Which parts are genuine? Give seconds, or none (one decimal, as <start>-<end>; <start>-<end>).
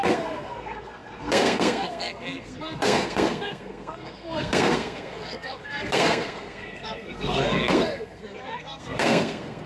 none